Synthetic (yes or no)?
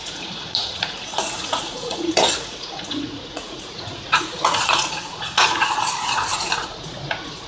yes